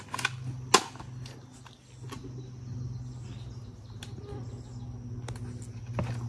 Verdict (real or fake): real